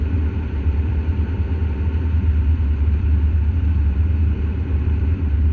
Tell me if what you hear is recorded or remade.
remade